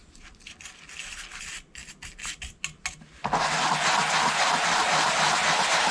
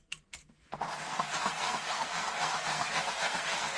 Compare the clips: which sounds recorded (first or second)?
first